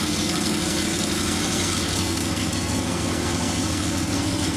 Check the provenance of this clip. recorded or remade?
remade